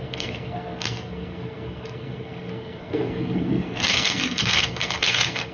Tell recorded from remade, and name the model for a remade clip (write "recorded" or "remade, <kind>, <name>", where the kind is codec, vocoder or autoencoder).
remade, codec, SNAC